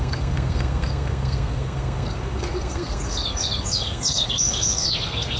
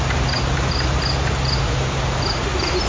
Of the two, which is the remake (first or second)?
first